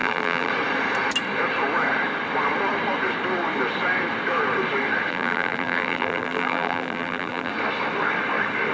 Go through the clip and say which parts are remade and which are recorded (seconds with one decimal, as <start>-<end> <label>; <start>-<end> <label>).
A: 0.0-0.5 remade; 0.5-5.1 recorded; 5.1-7.5 remade; 7.5-8.7 recorded